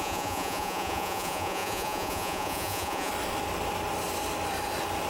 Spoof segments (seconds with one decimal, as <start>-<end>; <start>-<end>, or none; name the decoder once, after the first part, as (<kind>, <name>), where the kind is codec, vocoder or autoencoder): 0.0-3.1 (vocoder, Vocos)